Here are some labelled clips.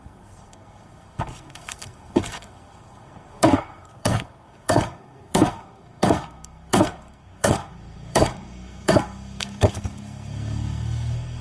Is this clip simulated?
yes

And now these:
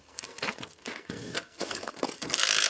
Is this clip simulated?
yes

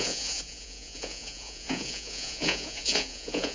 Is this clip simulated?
yes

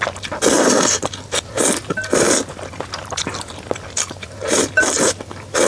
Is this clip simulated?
yes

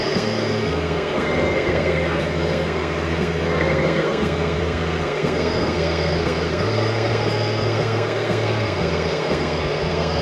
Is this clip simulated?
yes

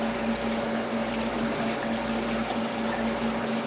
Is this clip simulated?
no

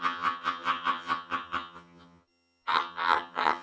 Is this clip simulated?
yes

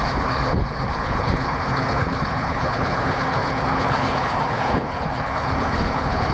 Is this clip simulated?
yes